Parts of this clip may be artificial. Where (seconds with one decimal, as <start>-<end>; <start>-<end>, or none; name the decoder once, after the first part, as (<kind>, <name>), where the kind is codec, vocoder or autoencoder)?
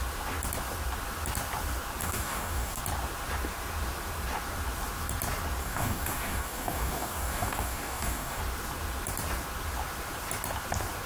2.0-2.8 (codec, DAC); 5.6-8.4